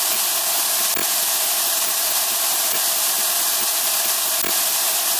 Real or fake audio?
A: real